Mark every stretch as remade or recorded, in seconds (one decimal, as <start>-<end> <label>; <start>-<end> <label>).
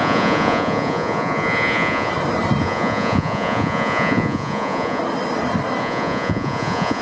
0.0-2.1 remade; 2.1-2.6 recorded; 2.6-5.0 remade; 5.0-5.8 recorded; 5.8-7.0 remade